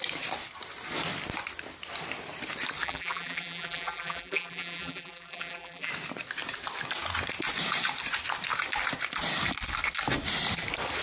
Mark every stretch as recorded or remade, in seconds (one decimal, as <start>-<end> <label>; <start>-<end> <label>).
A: 0.0-2.8 recorded; 2.8-5.9 remade; 5.9-11.0 recorded